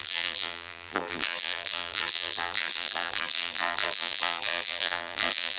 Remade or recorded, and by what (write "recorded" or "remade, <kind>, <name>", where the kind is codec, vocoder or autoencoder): remade, vocoder, BigVGAN v2